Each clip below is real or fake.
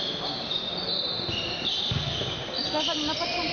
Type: real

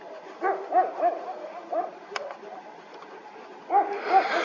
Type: real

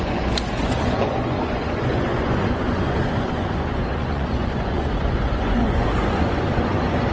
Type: fake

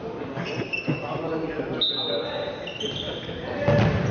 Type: real